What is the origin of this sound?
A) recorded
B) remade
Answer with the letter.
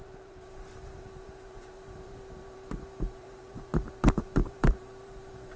B